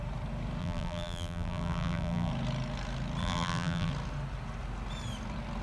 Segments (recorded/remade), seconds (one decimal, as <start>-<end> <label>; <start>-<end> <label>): 0.0-0.6 recorded; 0.6-2.3 remade; 2.3-3.2 recorded; 3.2-3.9 remade; 3.9-5.6 recorded